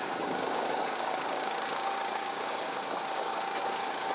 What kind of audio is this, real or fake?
fake